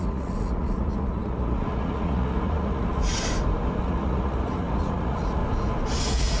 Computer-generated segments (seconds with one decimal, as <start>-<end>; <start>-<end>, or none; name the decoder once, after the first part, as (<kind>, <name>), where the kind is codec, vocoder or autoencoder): 0.0-3.1 (vocoder, Vocos); 3.8-5.4; 6.0-6.4